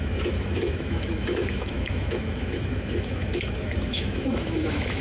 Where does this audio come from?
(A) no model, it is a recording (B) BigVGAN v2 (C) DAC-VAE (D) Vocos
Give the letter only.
C